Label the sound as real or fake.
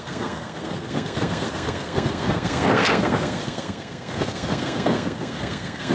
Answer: fake